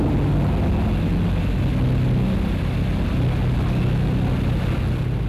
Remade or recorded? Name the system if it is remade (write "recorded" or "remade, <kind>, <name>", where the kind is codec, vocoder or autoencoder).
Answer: recorded